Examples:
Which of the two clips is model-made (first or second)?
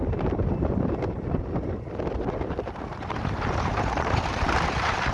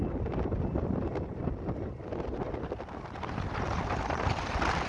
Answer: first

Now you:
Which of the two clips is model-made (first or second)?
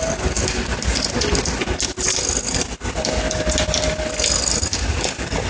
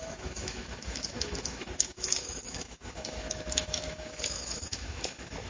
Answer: second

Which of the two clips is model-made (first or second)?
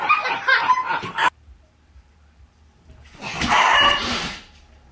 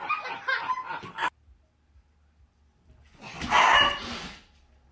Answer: first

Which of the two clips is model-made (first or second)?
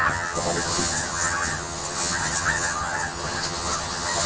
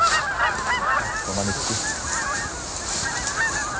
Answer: first